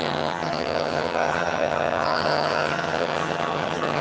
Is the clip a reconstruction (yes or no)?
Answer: yes